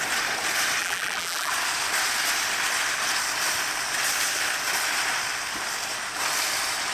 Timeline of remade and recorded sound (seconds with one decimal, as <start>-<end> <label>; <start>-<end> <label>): 0.0-0.8 recorded; 0.8-1.5 remade; 1.5-6.9 recorded